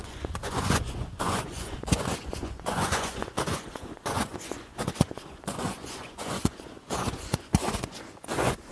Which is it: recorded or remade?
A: remade